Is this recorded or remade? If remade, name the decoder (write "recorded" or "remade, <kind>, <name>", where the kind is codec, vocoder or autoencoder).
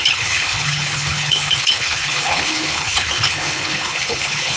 remade, codec, HILCodec